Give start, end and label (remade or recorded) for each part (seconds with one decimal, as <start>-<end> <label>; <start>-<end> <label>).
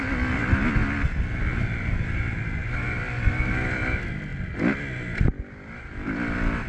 0.0-6.7 recorded